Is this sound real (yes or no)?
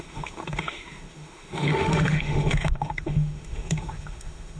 no